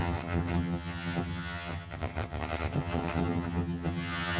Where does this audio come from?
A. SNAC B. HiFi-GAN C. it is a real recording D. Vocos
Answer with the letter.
B